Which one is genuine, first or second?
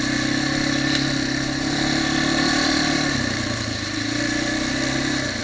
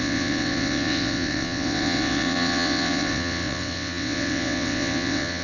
first